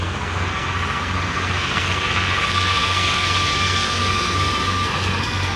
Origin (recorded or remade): remade